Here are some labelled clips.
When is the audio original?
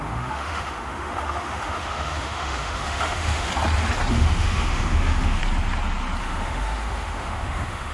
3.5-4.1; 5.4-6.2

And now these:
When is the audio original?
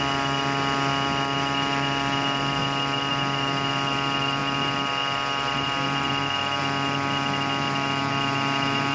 0.0-8.9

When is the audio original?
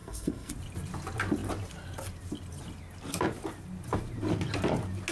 0.5-5.1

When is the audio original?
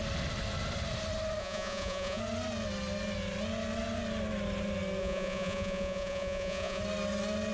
0.0-1.4; 2.2-5.0; 6.8-7.5